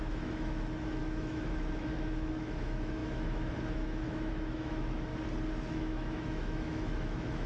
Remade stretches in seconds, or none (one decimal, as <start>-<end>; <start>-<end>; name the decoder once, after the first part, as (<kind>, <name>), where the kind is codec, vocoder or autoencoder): 0.0-5.1 (autoencoder, DAC-VAE); 5.7-7.5